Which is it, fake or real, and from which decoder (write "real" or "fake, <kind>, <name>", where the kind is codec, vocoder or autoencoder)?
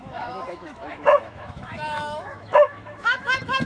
fake, autoencoder, DAC-VAE